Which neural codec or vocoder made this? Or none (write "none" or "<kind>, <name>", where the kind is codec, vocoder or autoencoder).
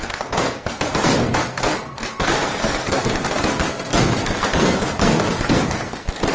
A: codec, SNAC